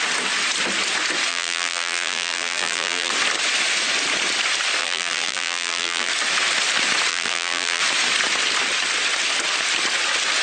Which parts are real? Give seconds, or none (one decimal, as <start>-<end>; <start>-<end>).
0.0-1.3; 3.1-4.8; 6.1-7.1; 7.8-10.4